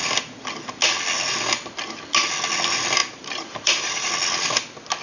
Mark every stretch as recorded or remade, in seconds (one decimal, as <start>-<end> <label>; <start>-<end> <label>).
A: 0.0-3.0 recorded; 3.0-4.1 remade; 4.1-5.0 recorded